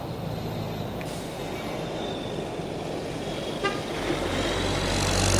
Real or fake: real